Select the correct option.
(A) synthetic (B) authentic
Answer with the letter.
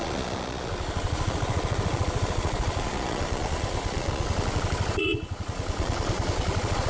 A